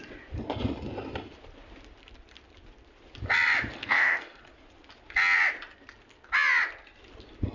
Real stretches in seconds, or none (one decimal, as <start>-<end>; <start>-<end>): 0.0-3.8; 4.4-7.5